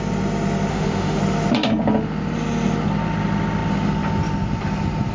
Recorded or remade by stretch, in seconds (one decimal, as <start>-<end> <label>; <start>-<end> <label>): 0.0-0.7 recorded; 0.7-1.2 remade; 1.2-5.1 recorded